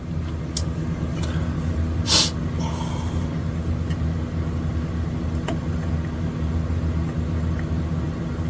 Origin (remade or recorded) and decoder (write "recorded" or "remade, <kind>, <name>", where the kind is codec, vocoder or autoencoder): recorded